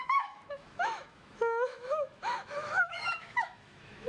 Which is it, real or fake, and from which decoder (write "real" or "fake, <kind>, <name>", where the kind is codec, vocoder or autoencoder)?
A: fake, autoencoder, DAC-VAE